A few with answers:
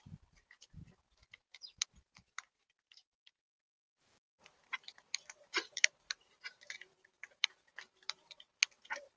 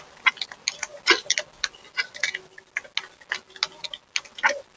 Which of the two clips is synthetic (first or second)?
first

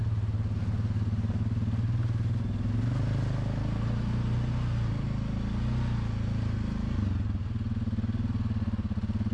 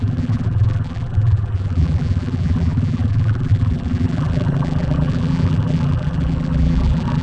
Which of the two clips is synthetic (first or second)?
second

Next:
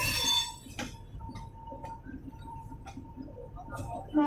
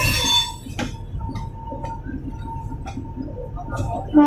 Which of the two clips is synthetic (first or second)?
first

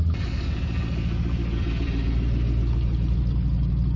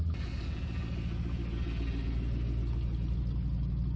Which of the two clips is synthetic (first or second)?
first